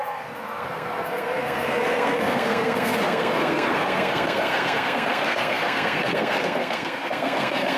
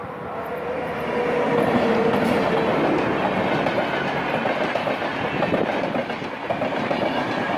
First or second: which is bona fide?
second